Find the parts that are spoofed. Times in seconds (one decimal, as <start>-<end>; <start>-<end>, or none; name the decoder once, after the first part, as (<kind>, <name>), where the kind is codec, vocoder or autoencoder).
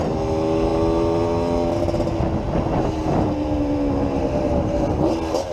none